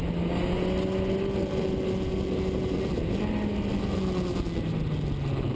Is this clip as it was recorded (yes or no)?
yes